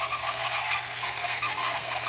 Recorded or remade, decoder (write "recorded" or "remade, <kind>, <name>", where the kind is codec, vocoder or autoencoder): remade, codec, SNAC